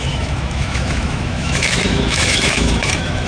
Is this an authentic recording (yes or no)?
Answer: no